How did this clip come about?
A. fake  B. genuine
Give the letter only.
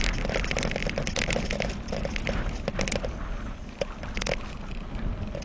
B